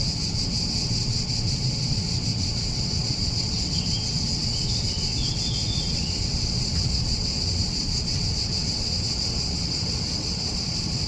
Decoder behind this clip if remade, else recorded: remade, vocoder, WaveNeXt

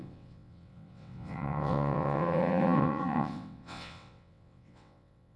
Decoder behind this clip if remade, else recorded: remade, vocoder, WaveNeXt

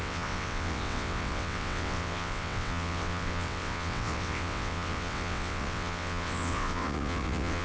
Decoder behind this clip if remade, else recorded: remade, vocoder, WaveNeXt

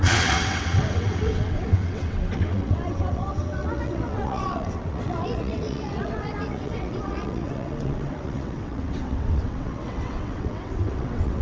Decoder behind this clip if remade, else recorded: remade, vocoder, WaveNeXt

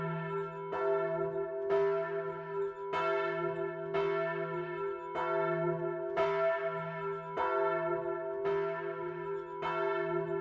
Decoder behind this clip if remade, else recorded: recorded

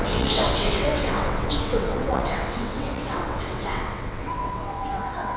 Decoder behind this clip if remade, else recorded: remade, vocoder, WaveNeXt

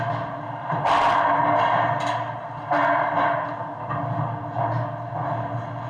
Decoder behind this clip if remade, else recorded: recorded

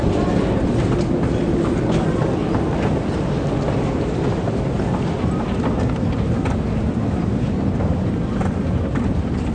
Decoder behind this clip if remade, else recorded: recorded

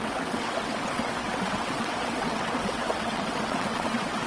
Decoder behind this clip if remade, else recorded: remade, vocoder, WaveNeXt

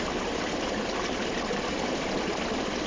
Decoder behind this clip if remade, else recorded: recorded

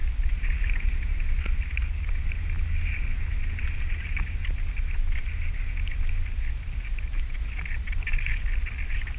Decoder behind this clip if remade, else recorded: recorded